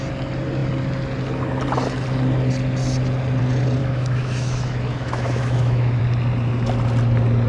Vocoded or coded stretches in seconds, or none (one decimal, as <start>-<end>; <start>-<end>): 3.8-6.0